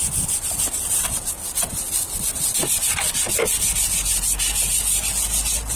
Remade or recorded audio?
recorded